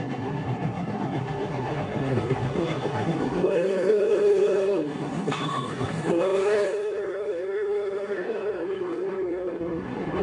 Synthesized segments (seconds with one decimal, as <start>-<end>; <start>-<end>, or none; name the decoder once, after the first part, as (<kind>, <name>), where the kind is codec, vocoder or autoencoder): 0.0-10.2 (codec, SNAC)